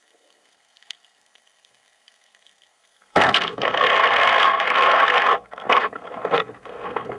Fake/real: fake